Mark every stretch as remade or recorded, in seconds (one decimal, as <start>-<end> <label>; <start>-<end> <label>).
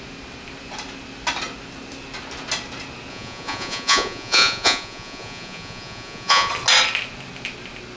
0.0-3.1 recorded; 3.1-6.5 remade; 6.5-8.0 recorded